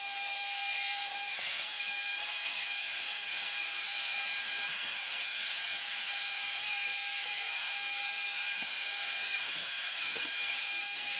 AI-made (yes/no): yes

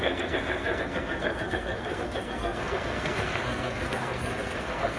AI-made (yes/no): yes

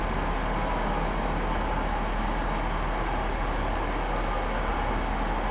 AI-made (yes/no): no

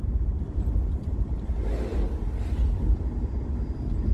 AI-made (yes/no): no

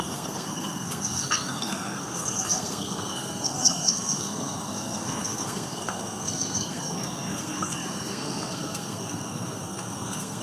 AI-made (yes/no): yes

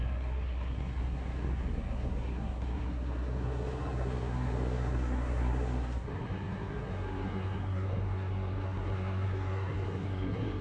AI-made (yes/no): yes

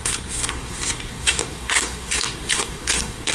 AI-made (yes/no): yes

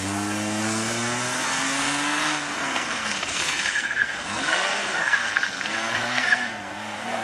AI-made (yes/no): yes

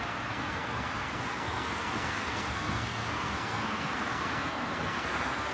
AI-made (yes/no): yes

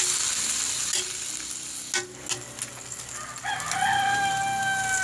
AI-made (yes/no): no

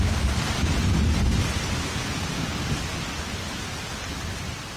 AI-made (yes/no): no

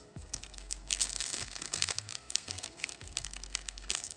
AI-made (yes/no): yes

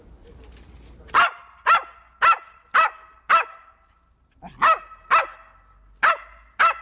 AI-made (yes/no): no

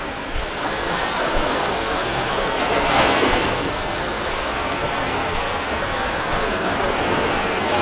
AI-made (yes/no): yes